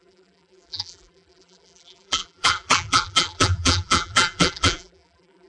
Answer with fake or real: fake